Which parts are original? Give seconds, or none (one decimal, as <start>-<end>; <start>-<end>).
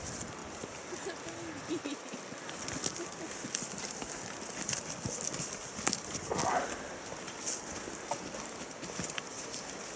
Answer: 0.0-10.0